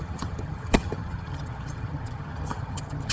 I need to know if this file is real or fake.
fake